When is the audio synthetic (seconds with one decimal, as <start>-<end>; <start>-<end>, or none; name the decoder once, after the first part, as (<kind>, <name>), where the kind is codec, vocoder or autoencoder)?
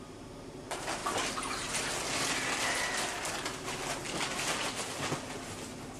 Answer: none